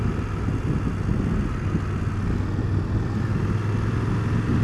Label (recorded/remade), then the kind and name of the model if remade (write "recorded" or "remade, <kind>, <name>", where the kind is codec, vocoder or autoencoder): recorded